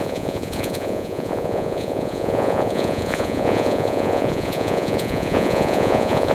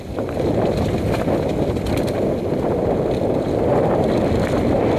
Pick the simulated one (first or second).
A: first